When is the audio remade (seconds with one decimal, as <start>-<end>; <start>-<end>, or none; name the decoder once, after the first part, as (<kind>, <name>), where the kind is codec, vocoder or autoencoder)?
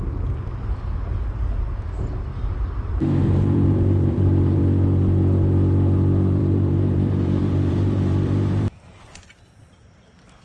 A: 2.3-4.6 (vocoder, BigVGAN v2); 6.4-9.0